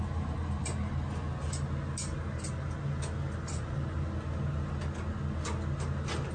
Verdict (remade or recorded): recorded